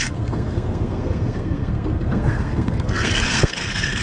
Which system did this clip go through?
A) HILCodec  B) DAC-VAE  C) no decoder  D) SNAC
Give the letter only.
D